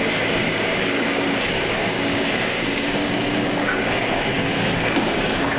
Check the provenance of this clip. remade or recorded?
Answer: remade